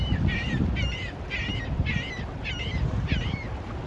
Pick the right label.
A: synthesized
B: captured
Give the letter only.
B